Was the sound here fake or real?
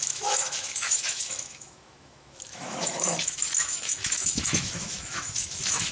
fake